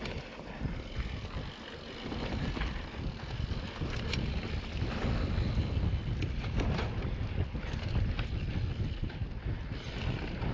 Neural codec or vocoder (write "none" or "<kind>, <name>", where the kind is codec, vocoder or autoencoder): none